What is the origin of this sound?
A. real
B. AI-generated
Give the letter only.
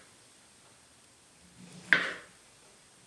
A